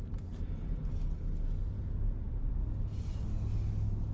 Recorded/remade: recorded